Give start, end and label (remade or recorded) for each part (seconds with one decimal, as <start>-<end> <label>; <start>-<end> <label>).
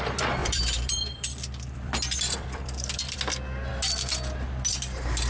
0.0-0.4 recorded; 0.4-3.2 remade; 3.2-5.3 recorded